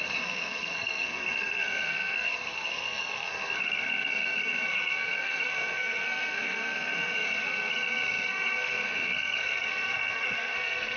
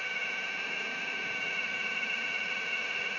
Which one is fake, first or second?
first